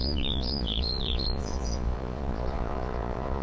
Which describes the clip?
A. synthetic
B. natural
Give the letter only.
A